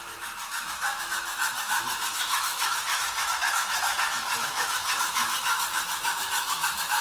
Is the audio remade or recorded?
remade